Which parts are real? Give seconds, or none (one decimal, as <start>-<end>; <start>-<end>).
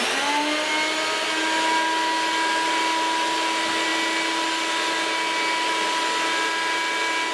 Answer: 0.0-7.3